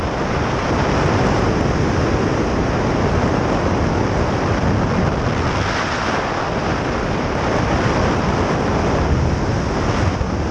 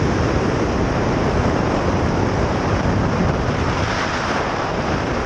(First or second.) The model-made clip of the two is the second